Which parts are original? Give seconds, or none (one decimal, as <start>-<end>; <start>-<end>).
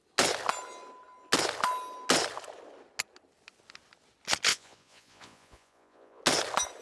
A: 0.0-4.5; 6.2-6.8